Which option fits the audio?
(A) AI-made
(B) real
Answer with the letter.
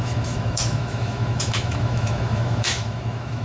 A